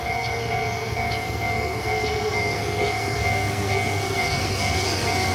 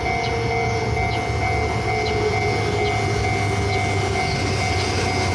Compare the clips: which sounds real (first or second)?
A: second